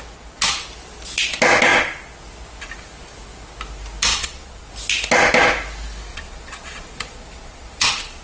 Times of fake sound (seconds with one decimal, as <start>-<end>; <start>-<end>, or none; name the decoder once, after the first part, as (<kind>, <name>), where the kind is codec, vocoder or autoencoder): 4.1-4.7 (vocoder, Vocos); 6.1-8.2